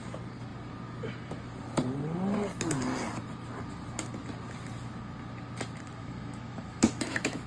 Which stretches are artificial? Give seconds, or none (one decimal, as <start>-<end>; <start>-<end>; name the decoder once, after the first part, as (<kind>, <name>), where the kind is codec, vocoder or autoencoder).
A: 6.0-7.5 (autoencoder, DAC-VAE)